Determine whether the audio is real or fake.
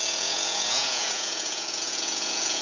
fake